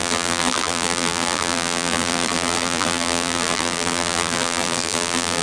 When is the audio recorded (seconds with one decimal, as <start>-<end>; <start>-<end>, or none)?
none